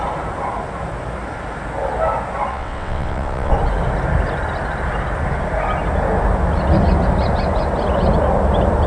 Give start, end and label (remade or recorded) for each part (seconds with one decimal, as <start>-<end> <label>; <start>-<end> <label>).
0.0-2.5 recorded; 2.5-3.5 remade; 3.5-8.9 recorded